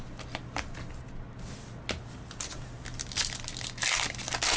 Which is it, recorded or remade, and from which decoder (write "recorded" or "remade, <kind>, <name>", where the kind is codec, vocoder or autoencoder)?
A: recorded